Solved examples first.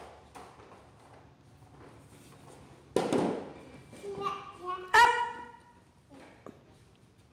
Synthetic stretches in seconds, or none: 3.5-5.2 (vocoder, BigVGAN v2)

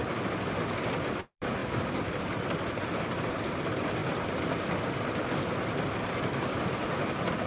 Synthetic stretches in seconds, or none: 0.0-1.6 (vocoder, BigVGAN v2); 3.4-4.0

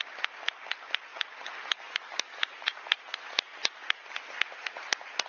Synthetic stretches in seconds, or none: 1.1-3.0 (vocoder, BigVGAN v2)

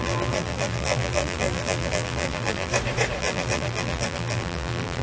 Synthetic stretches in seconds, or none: 0.0-2.7 (vocoder, BigVGAN v2); 3.2-5.0